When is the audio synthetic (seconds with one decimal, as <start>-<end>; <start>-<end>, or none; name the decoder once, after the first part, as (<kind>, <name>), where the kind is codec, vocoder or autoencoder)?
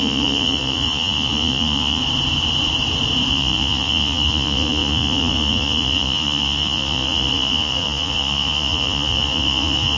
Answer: 0.0-2.0 (vocoder, Vocos); 3.3-10.0